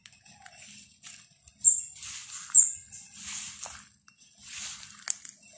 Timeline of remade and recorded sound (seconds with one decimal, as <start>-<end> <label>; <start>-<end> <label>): 0.0-5.6 recorded